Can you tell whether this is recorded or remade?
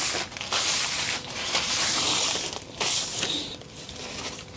recorded